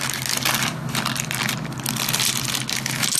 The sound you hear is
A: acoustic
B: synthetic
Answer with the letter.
A